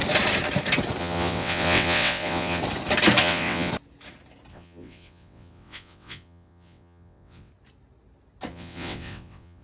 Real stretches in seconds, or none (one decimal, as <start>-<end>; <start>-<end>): 0.0-1.0; 2.6-3.2; 3.7-4.5; 7.5-8.5